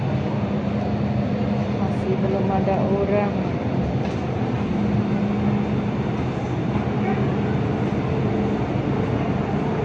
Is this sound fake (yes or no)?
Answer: no